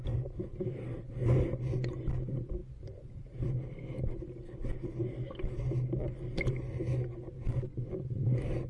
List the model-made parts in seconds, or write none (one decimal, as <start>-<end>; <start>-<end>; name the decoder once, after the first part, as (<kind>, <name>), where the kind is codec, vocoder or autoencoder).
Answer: none